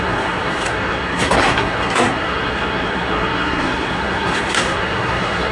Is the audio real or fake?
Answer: fake